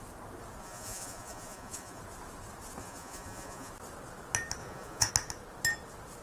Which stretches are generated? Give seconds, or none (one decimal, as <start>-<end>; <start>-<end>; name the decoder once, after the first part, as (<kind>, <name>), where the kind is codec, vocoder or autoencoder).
0.6-2.0 (vocoder, Vocos); 2.8-3.7; 4.6-5.1